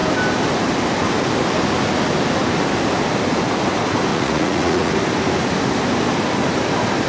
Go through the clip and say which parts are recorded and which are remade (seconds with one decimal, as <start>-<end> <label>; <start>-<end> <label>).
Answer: 0.0-4.1 recorded; 4.1-4.9 remade; 4.9-7.1 recorded